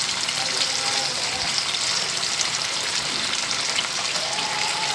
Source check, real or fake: fake